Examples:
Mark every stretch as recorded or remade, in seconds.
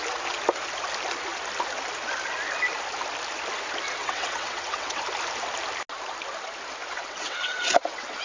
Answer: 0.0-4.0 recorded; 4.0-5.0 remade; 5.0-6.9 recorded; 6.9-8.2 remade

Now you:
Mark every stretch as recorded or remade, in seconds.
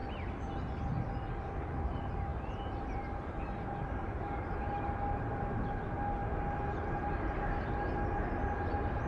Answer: 0.0-9.1 recorded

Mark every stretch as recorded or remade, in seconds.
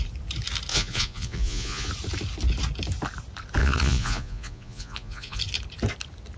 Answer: 0.0-0.7 recorded; 0.7-1.9 remade; 1.9-3.6 recorded; 3.6-5.4 remade; 5.4-6.4 recorded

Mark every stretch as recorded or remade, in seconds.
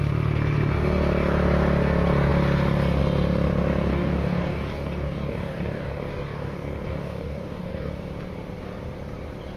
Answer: 0.0-3.9 recorded; 3.9-7.9 remade; 7.9-9.6 recorded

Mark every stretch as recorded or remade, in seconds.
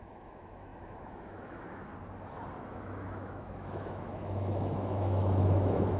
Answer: 0.0-1.9 remade; 1.9-2.7 recorded; 2.7-6.0 remade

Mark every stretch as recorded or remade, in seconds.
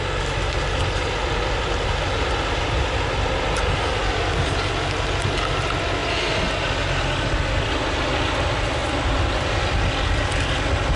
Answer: 0.0-11.0 recorded